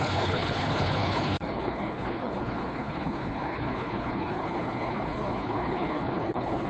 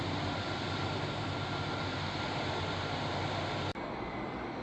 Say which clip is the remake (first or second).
first